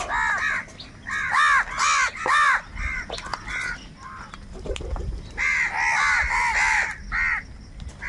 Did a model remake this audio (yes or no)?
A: no